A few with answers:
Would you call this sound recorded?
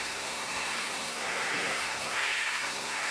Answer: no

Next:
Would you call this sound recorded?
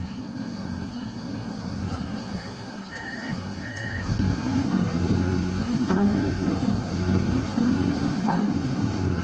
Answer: no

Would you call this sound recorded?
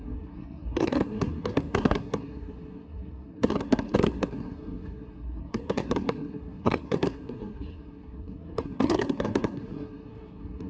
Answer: no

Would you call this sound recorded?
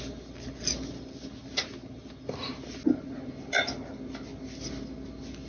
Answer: yes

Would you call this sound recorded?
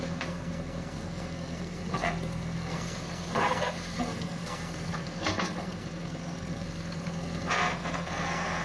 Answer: no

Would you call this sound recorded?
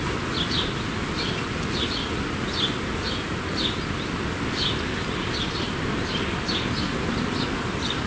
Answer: yes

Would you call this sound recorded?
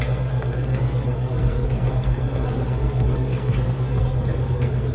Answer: no